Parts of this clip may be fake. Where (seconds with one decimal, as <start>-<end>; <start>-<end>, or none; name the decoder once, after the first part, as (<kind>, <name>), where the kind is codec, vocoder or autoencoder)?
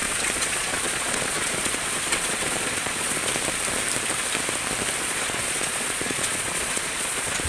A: 0.0-3.2 (vocoder, Vocos); 5.0-7.5